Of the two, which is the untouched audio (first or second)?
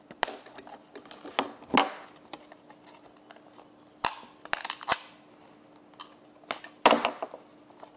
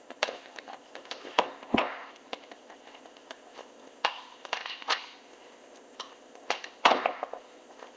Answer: first